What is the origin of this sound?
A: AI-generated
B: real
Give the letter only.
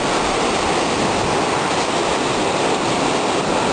B